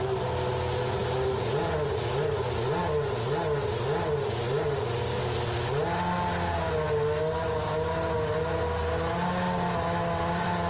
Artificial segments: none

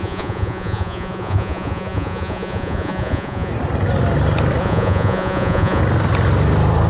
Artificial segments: 0.0-3.5 (vocoder, Vocos); 4.6-5.8

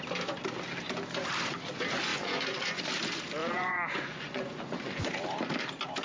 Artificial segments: 2.1-2.8 (vocoder, Vocos); 3.4-5.0

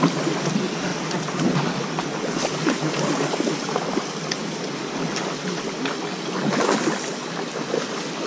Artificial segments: none

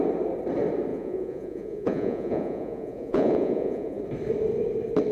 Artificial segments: 0.9-4.0 (vocoder, Vocos)

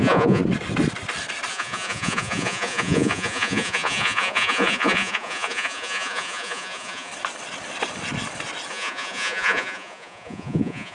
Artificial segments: 0.0-0.4 (vocoder, Vocos); 1.5-7.1; 8.7-10.9

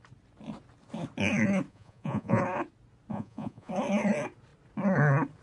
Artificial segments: 1.7-2.4 (vocoder, Vocos); 3.1-3.7